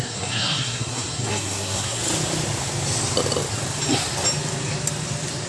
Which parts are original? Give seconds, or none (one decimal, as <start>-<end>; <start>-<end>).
2.0-5.5